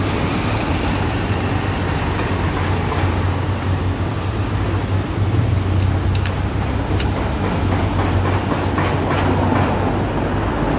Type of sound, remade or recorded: recorded